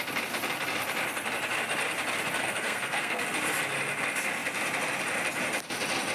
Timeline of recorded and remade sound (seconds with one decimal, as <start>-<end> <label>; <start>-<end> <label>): 0.0-2.4 recorded; 2.4-3.2 remade; 3.2-6.1 recorded